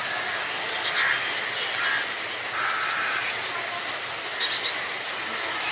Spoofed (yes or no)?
no